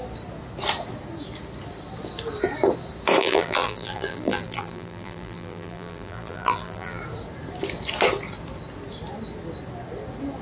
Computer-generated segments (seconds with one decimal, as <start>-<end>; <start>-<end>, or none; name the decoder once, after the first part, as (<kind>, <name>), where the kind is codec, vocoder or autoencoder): 3.2-7.0 (vocoder, BigVGAN v2)